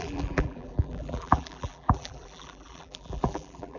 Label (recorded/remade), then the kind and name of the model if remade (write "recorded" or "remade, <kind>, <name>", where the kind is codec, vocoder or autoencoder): remade, vocoder, BigVGAN v2